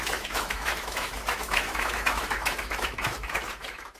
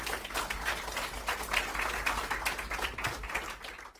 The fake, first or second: first